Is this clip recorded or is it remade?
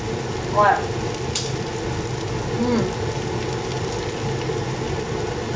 recorded